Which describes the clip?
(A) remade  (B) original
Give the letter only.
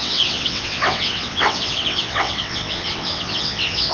A